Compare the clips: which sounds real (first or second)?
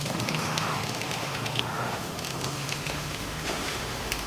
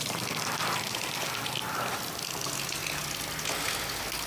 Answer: second